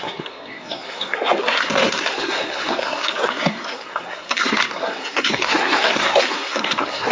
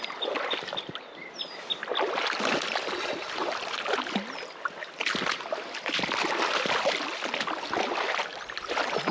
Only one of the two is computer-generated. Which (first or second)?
first